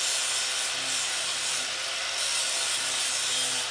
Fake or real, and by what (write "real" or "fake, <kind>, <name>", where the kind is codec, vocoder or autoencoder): real